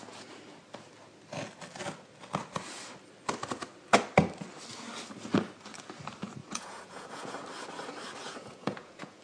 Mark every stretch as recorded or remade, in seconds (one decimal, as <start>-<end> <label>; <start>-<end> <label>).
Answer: 0.0-6.4 recorded; 6.4-7.3 remade; 7.3-8.2 recorded; 8.2-9.2 remade